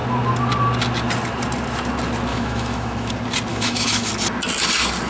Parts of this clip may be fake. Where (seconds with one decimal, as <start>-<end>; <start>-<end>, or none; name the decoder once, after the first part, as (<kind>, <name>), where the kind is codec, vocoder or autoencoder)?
2.3-3.1 (autoencoder, DAC-VAE); 3.5-4.1